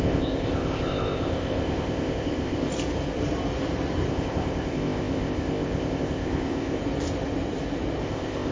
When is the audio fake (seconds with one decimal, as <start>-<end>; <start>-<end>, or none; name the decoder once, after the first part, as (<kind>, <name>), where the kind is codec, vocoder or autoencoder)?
0.0-2.7 (codec, ZipCodec); 4.1-6.8; 8.0-8.5